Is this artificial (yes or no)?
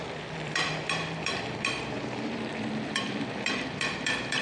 yes